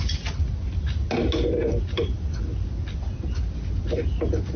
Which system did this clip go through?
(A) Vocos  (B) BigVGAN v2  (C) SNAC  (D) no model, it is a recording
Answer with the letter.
D